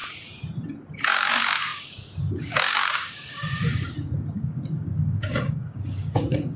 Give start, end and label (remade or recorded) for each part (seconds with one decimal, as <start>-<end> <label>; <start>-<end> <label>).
0.0-0.9 recorded; 0.9-6.6 remade